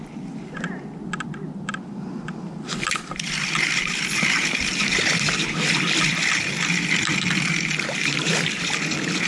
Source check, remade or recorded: recorded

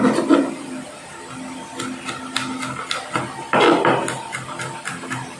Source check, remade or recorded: recorded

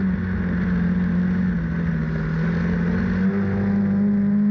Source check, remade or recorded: recorded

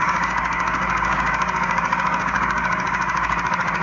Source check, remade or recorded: remade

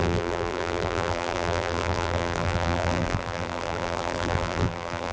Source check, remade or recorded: remade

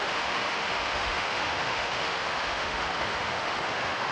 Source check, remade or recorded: remade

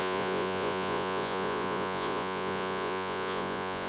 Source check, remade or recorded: remade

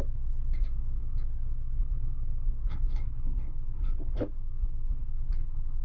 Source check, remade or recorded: remade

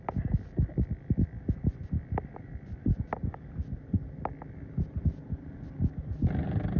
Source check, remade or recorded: recorded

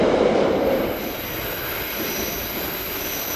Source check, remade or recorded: recorded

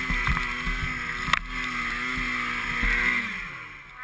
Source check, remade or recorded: recorded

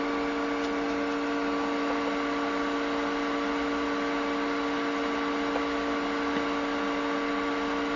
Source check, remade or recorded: recorded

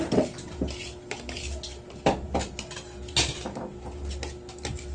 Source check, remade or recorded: recorded